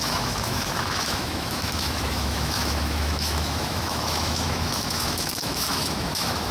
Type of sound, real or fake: fake